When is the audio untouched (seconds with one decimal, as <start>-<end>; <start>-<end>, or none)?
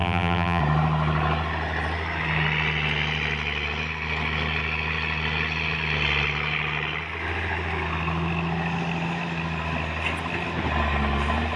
0.6-11.6